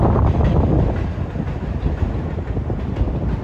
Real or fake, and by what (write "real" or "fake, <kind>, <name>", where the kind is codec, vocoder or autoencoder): real